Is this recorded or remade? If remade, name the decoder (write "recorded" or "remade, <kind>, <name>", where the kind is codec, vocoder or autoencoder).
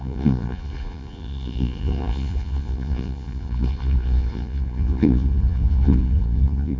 remade, vocoder, Vocos